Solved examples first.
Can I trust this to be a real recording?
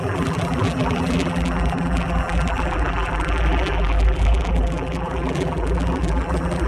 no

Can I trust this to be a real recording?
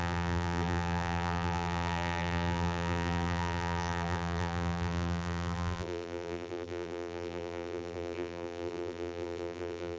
no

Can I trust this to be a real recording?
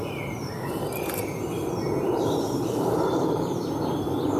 no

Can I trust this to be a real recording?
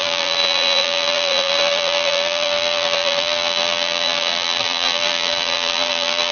no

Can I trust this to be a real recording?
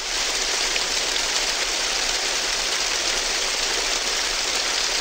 no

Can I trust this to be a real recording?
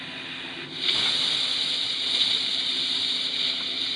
yes